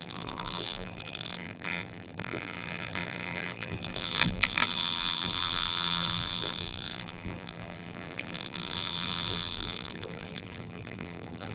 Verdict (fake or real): fake